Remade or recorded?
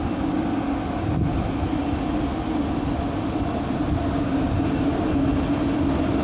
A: recorded